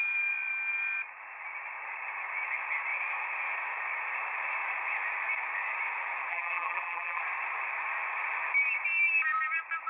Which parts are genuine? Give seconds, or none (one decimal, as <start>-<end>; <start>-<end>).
0.0-6.3; 7.2-9.9